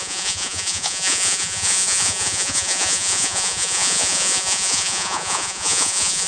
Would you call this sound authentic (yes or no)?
no